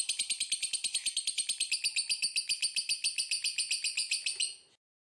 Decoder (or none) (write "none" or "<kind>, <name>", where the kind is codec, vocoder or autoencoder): none